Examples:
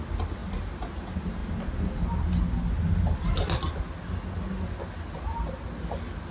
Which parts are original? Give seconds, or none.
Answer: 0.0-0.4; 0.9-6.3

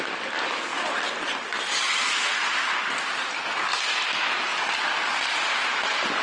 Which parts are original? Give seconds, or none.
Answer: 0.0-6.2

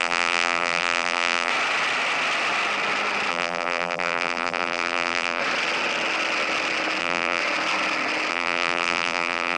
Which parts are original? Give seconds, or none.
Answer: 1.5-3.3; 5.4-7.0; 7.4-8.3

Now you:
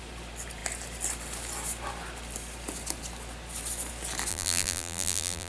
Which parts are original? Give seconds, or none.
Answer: 0.0-4.3

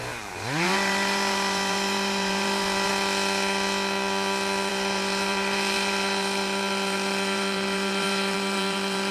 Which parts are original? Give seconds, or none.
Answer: 2.9-4.7